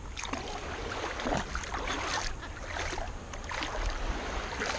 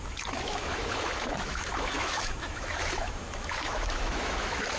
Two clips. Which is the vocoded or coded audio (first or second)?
second